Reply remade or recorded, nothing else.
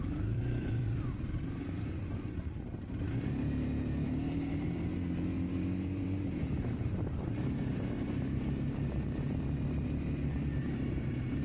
remade